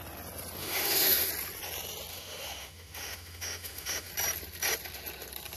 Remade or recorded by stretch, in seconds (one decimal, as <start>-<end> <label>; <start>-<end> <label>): 0.0-0.6 recorded; 0.6-1.3 remade; 1.3-2.1 recorded; 2.1-4.1 remade; 4.1-5.6 recorded